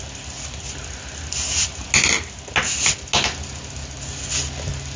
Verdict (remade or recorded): recorded